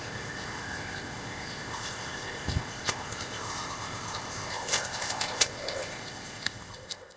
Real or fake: fake